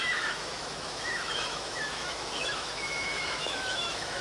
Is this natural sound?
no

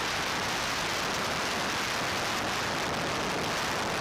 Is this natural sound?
yes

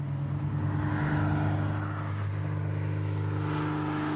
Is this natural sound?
yes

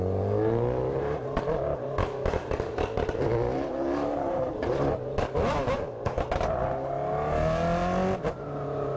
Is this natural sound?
yes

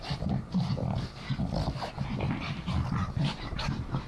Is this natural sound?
yes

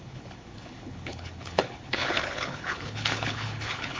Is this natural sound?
no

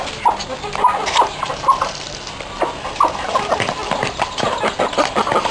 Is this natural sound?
yes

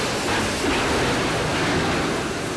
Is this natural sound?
yes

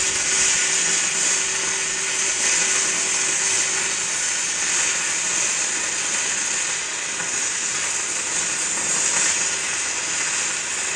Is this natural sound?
yes